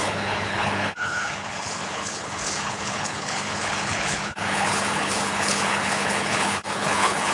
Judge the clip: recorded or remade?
remade